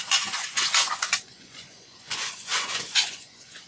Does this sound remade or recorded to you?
remade